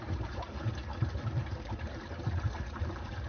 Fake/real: fake